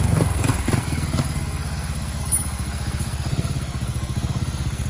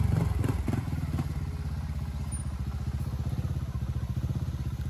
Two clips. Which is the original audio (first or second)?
second